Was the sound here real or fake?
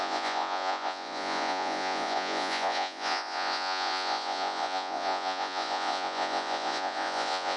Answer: fake